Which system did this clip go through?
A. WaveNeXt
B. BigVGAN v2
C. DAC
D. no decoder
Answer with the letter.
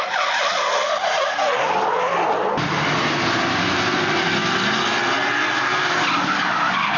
D